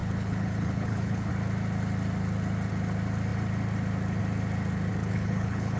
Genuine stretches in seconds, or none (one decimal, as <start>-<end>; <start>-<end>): 1.3-5.0